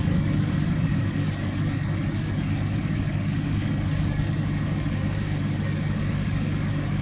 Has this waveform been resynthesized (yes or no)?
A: yes